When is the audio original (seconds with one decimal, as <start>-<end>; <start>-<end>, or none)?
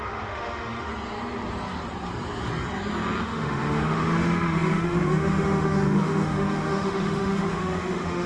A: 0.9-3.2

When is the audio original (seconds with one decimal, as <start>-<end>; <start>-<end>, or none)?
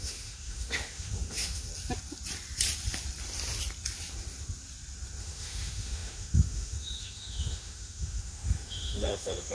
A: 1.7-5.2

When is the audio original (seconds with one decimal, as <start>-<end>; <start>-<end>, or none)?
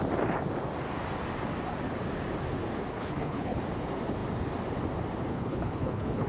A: 0.0-2.9; 3.6-5.3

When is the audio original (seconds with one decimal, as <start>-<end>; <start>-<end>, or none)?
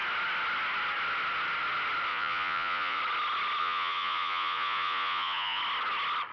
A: 0.0-2.1; 3.0-3.6; 5.6-6.3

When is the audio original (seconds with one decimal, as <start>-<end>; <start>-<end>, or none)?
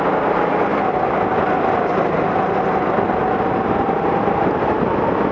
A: 0.0-5.3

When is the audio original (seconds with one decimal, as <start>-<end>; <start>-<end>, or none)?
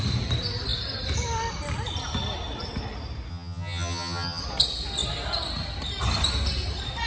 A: 0.0-3.3; 4.4-7.1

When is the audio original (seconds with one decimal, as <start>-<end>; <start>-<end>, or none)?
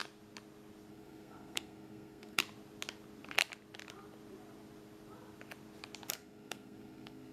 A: 0.0-0.9; 2.4-6.1